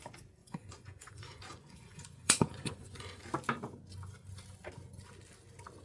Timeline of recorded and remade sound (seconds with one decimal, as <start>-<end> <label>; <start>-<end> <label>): 0.0-0.4 recorded; 0.4-3.2 remade; 3.2-5.8 recorded